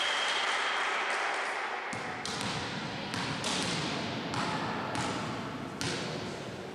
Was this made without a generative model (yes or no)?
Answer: yes